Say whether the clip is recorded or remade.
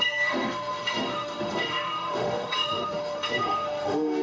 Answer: remade